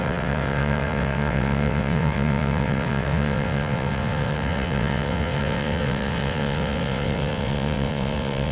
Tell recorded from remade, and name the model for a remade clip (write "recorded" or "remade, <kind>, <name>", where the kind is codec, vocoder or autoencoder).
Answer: remade, vocoder, WaveNeXt